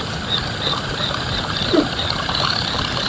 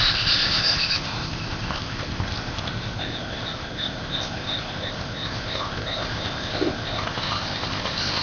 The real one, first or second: first